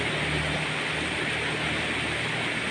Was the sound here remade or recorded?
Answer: recorded